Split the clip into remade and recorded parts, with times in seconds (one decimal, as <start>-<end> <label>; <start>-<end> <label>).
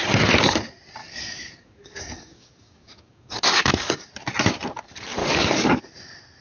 0.0-1.0 recorded; 1.0-4.1 remade; 4.1-5.2 recorded; 5.2-5.8 remade; 5.8-6.4 recorded